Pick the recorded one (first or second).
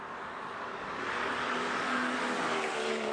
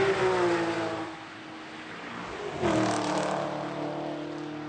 second